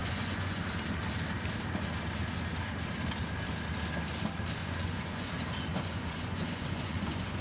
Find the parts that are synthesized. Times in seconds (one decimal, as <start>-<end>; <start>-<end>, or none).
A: 0.0-0.6; 4.6-5.3; 5.7-7.4